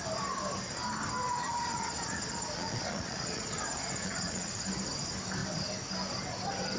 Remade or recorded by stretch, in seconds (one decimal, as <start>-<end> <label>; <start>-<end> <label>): 0.0-1.4 recorded; 1.4-4.6 remade; 4.6-6.8 recorded